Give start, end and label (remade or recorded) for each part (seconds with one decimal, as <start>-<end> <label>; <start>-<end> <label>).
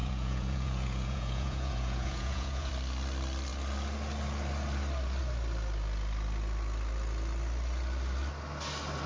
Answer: 0.0-2.7 remade; 2.7-9.1 recorded